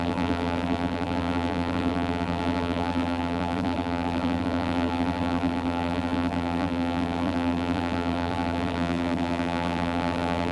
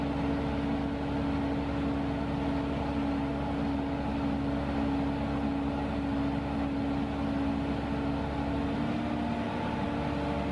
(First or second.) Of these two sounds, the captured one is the second